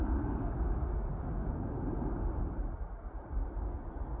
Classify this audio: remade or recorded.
recorded